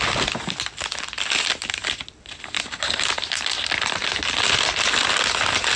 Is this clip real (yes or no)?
yes